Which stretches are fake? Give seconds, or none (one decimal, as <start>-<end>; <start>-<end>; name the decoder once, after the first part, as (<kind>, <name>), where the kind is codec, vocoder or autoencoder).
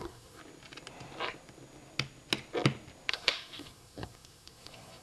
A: 0.0-0.4 (codec, SNAC); 3.1-5.0